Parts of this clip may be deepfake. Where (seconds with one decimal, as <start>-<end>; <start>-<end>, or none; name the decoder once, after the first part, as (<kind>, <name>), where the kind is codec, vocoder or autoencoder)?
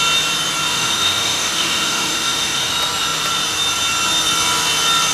0.7-2.7 (autoencoder, DAC-VAE)